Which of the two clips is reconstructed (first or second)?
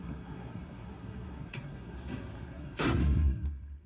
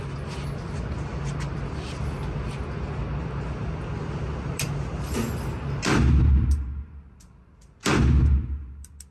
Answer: first